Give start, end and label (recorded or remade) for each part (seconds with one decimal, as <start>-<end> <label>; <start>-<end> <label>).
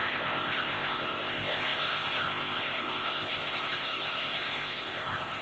0.0-5.4 remade